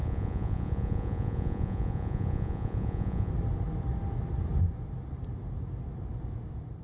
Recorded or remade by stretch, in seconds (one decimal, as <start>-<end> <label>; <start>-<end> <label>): 0.0-3.3 remade; 3.3-6.8 recorded